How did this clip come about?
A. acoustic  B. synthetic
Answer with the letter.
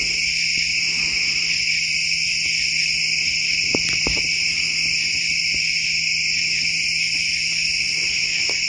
A